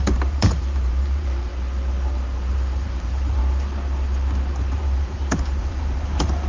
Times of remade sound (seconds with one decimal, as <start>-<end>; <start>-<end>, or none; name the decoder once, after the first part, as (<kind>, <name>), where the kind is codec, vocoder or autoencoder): 0.0-1.5 (vocoder, BigVGAN v2); 2.5-3.4; 4.6-6.5